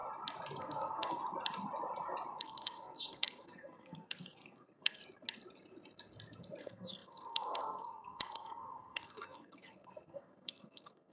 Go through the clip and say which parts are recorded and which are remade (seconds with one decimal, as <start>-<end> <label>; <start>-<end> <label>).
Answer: 0.0-0.6 recorded; 0.6-1.2 remade; 1.2-2.4 recorded; 2.4-5.0 remade; 5.0-6.6 recorded; 6.6-11.1 remade